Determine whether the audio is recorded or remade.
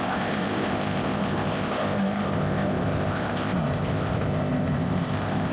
remade